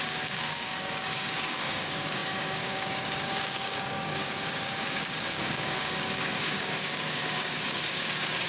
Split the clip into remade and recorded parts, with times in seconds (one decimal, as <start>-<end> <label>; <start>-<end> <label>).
0.0-8.5 remade